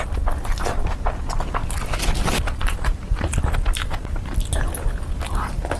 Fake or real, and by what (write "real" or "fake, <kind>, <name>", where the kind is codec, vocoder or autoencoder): real